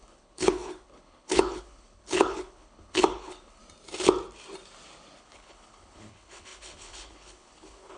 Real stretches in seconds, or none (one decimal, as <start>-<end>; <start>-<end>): 3.6-5.2